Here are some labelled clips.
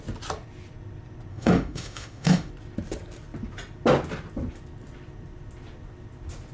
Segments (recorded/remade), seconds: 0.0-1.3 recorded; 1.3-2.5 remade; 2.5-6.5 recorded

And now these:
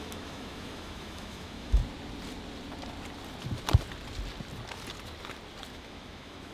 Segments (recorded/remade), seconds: 0.0-1.8 remade; 1.8-5.7 recorded; 5.7-6.5 remade